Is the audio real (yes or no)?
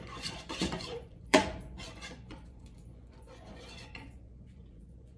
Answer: no